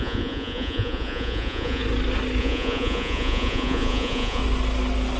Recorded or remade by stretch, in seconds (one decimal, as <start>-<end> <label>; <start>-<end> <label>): 0.0-1.8 remade; 1.8-2.4 recorded; 2.4-4.4 remade; 4.4-5.2 recorded